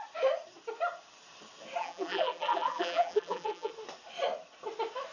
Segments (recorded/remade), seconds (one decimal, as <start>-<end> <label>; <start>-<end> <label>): 0.0-1.8 recorded; 1.8-3.7 remade; 3.7-5.1 recorded